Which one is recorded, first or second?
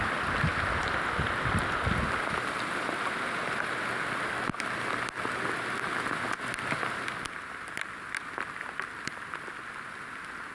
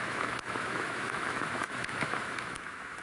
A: first